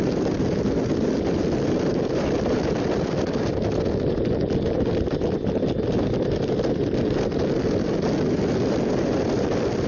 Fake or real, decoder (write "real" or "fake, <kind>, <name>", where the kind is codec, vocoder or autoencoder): real